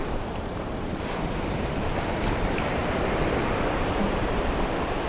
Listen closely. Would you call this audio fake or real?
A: fake